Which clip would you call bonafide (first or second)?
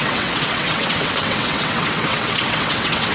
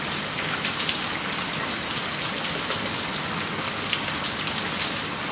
second